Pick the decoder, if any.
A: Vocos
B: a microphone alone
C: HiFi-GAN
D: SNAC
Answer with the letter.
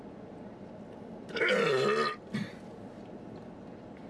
B